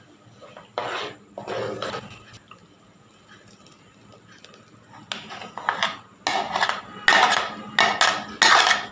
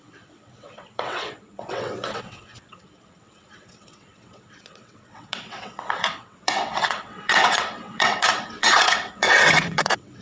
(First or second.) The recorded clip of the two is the first